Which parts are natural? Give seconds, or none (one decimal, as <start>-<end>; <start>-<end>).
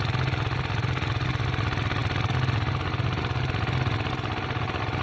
0.0-5.0